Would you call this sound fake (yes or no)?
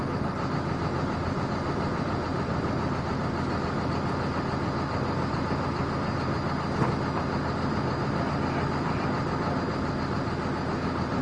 no